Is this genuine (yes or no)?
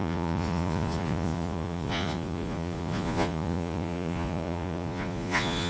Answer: no